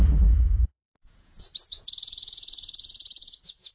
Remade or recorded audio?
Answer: remade